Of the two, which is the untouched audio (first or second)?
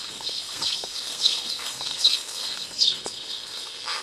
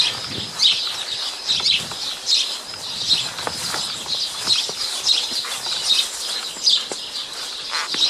second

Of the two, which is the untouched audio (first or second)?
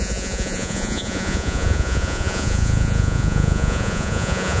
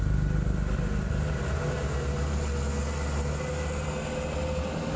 second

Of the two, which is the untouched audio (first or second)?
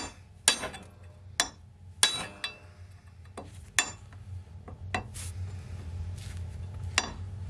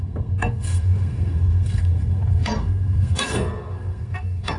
first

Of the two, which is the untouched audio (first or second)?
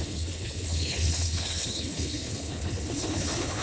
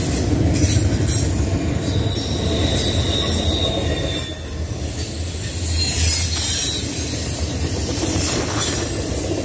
second